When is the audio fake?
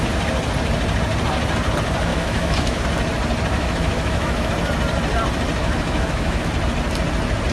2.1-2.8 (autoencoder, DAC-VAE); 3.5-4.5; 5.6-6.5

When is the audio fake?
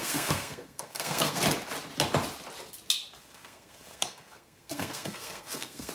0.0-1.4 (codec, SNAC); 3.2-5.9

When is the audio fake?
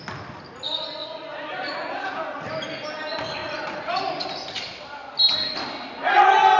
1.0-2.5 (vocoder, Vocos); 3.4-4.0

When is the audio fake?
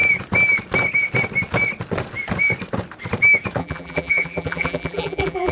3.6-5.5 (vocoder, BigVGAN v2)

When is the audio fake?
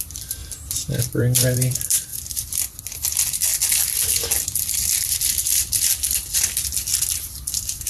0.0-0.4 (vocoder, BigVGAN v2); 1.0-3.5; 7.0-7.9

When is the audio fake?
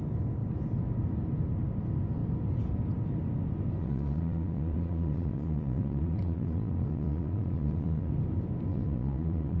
3.8-8.1 (vocoder, Vocos); 8.7-9.6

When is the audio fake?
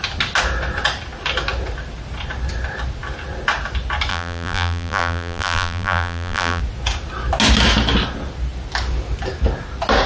4.1-6.6 (vocoder, BigVGAN v2)